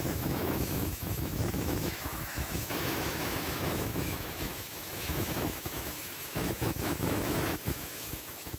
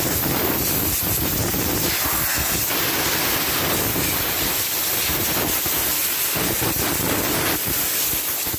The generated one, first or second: first